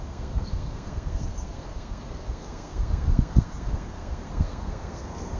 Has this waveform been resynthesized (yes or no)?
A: yes